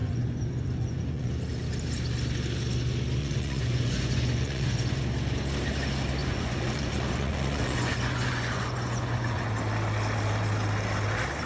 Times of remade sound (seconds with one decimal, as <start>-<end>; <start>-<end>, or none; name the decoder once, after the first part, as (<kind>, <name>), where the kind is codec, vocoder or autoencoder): 0.0-1.3 (vocoder, Vocos); 3.2-5.0; 6.2-9.5